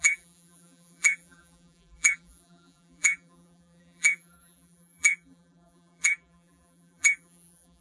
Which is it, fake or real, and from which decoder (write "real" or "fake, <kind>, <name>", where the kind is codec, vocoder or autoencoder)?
fake, vocoder, BigVGAN v2